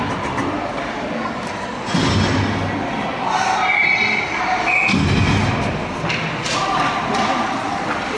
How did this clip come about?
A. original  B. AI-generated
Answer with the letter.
A